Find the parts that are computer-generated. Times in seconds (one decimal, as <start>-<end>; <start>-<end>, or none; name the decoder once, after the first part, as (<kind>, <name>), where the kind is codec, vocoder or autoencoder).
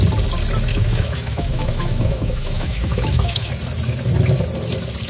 0.7-3.5 (autoencoder, DAC-VAE)